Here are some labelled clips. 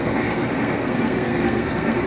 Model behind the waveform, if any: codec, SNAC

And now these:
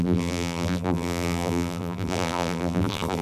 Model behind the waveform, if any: vocoder, BigVGAN v2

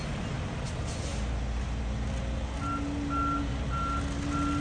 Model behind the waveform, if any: none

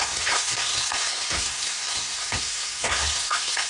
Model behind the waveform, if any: codec, SNAC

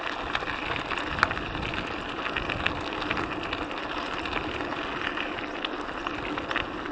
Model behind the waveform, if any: none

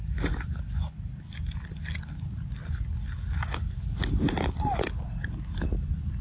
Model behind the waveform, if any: none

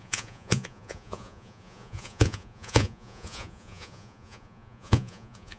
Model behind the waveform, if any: vocoder, Vocos